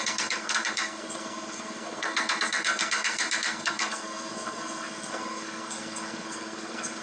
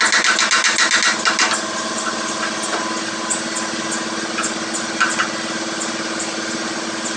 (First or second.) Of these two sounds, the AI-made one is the first